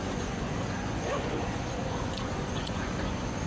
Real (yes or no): no